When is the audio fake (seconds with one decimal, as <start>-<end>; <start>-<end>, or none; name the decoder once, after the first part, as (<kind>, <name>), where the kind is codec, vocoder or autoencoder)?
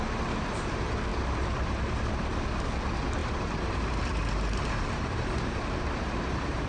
0.0-6.7 (vocoder, BigVGAN v2)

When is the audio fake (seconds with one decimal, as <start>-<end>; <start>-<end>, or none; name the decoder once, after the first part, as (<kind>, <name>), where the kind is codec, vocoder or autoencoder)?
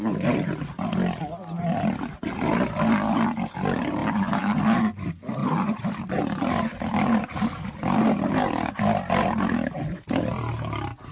4.0-4.6 (vocoder, BigVGAN v2); 5.4-8.7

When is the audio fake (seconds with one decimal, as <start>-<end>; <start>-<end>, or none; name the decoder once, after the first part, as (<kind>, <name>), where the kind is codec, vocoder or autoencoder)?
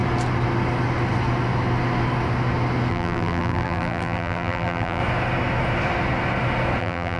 2.9-5.0 (vocoder, BigVGAN v2); 6.8-7.2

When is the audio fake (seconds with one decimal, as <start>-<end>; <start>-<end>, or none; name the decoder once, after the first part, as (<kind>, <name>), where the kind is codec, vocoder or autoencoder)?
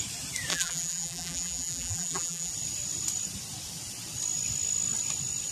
0.5-2.5 (vocoder, BigVGAN v2)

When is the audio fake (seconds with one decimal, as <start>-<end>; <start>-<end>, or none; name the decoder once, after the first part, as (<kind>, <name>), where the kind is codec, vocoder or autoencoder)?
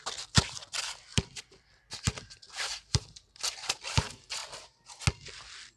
1.1-3.7 (vocoder, BigVGAN v2); 4.4-5.0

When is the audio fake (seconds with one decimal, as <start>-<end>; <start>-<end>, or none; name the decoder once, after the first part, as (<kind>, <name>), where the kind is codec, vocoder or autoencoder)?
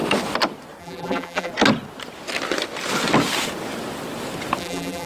0.8-1.5 (vocoder, BigVGAN v2); 4.6-5.1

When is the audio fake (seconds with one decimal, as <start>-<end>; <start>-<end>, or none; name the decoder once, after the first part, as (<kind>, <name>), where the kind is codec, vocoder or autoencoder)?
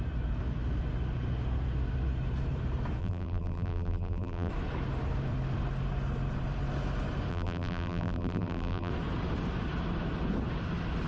3.0-4.5 (vocoder, BigVGAN v2); 7.3-8.9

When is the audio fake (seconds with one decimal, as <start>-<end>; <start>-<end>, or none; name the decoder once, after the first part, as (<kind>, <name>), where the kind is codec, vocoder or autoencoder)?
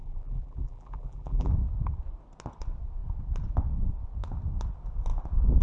0.0-1.5 (vocoder, BigVGAN v2)